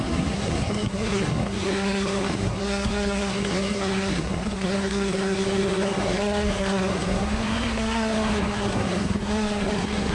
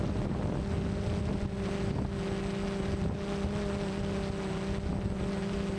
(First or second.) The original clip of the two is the second